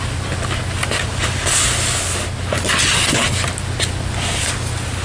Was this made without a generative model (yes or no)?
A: yes